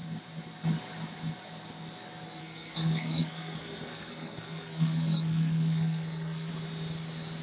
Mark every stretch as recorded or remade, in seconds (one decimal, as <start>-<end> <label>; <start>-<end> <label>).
0.0-2.4 recorded; 2.4-6.5 remade; 6.5-7.4 recorded

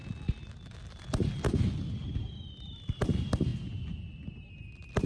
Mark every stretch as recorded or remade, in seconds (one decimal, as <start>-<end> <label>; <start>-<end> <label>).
0.0-5.1 recorded

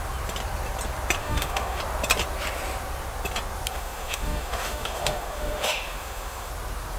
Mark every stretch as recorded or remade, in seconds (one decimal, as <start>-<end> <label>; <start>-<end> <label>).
0.0-1.2 recorded; 1.2-1.8 remade; 1.8-3.7 recorded; 3.7-6.5 remade; 6.5-7.0 recorded

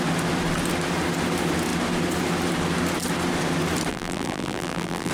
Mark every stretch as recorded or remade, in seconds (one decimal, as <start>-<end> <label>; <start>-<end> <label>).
0.0-3.9 recorded; 3.9-5.1 remade

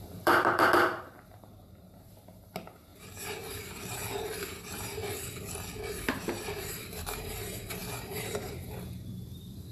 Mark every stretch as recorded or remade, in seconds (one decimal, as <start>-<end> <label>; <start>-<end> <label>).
0.0-4.0 remade; 4.0-4.6 recorded; 4.6-5.0 remade; 5.0-5.9 recorded; 5.9-9.7 remade

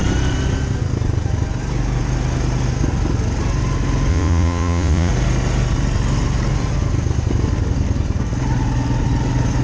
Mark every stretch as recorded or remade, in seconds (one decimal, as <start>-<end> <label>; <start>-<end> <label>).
0.0-4.1 recorded; 4.1-5.1 remade; 5.1-9.6 recorded